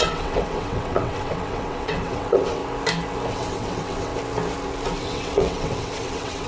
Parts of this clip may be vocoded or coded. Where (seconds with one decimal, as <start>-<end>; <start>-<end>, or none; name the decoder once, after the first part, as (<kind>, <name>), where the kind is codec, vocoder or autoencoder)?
0.0-2.6 (vocoder, WaveNeXt); 3.3-4.1; 5.0-6.5